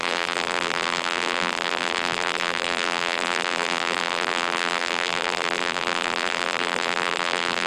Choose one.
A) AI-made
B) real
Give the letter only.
A